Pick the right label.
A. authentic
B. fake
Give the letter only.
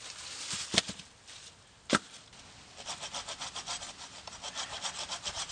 A